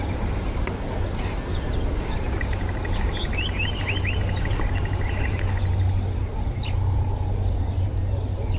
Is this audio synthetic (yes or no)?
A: no